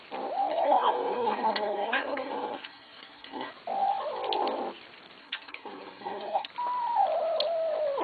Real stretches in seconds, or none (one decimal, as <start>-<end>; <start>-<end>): 0.0-0.5; 3.5-5.2; 6.5-8.0